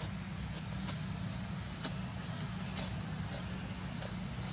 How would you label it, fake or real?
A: real